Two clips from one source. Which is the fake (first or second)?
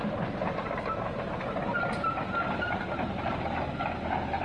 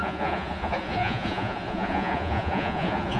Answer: second